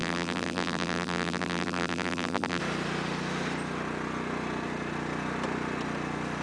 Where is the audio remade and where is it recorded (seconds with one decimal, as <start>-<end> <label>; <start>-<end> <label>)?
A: 0.0-2.6 remade; 2.6-6.4 recorded